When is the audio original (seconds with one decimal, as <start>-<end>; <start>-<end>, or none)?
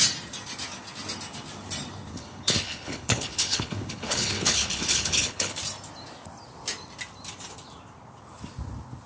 0.0-2.1; 5.6-9.1